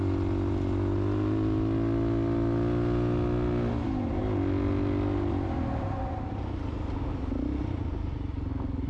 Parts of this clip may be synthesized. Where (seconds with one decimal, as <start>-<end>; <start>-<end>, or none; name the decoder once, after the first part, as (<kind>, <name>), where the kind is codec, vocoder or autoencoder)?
none